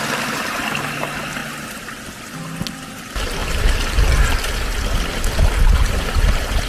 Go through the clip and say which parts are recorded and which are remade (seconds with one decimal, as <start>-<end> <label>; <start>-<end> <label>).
0.0-1.4 recorded; 1.4-2.0 remade; 2.0-3.4 recorded; 3.4-4.5 remade; 4.5-6.7 recorded